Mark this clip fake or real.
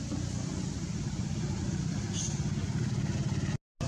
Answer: real